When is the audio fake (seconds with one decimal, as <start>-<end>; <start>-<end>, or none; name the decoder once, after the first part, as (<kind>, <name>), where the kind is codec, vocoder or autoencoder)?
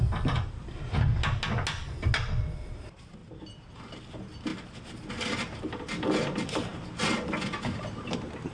none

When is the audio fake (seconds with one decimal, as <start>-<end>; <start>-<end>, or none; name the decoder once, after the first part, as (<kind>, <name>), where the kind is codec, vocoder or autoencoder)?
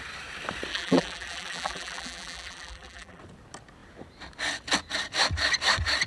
0.7-3.2 (vocoder, BigVGAN v2)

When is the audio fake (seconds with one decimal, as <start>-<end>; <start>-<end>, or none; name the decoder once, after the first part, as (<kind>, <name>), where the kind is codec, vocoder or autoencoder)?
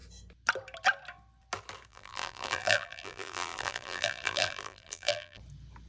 1.9-5.4 (vocoder, BigVGAN v2)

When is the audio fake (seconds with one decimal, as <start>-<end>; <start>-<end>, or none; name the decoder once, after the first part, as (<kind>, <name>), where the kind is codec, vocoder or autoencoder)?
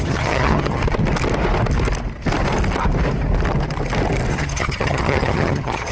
0.0-0.8 (vocoder, HiFi-GAN); 4.3-5.9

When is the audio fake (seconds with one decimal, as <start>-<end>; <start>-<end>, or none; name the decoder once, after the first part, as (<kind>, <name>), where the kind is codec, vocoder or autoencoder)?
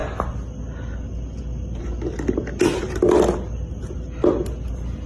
none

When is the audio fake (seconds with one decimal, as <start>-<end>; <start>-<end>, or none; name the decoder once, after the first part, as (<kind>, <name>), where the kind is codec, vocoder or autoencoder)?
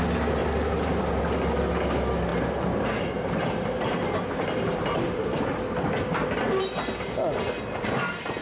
0.4-1.2 (vocoder, BigVGAN v2); 2.3-5.4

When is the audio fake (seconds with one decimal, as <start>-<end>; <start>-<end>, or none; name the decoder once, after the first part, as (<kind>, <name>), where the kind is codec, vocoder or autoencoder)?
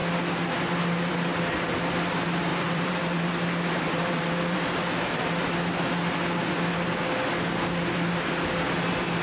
2.5-5.3 (vocoder, BigVGAN v2)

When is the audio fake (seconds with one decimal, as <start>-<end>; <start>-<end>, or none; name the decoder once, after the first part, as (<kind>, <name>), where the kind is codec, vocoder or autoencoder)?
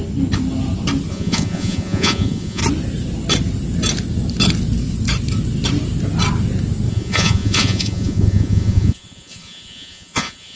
1.1-2.6 (vocoder, Vocos); 6.9-10.6